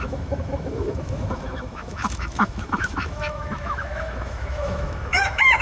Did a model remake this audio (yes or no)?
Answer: yes